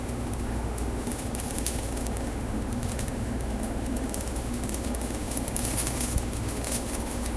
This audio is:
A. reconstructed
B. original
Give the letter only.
A